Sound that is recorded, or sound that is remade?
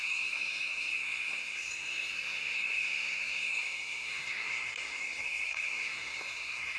remade